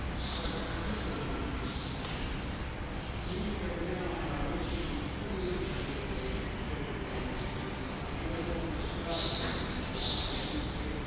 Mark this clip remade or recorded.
recorded